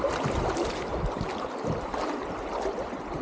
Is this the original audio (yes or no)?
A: yes